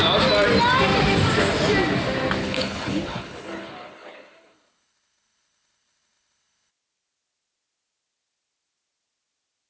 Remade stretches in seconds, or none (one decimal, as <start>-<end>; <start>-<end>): 2.4-6.7